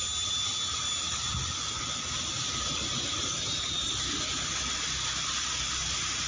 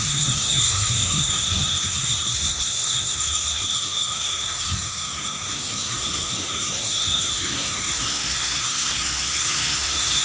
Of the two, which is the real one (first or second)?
first